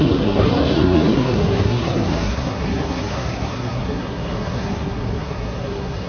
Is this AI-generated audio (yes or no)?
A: yes